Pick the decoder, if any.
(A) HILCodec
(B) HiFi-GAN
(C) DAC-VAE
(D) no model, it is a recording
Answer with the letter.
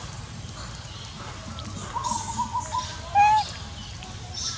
D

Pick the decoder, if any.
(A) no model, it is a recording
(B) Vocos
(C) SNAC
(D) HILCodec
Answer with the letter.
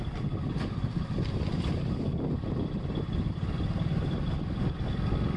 A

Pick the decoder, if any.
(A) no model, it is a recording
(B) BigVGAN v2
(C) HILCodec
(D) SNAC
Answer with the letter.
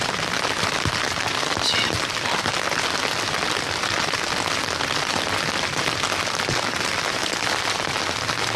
A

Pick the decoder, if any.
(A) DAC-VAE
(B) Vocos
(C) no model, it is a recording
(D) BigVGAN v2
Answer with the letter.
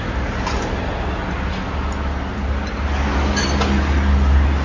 C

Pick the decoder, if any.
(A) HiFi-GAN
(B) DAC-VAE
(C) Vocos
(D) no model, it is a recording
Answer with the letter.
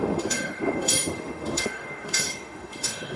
B